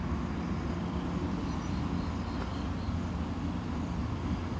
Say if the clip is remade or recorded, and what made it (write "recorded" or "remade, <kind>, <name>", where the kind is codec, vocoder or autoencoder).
recorded